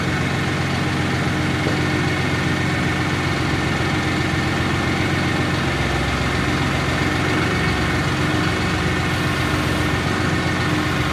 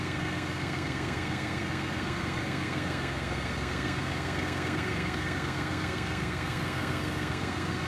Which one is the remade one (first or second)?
second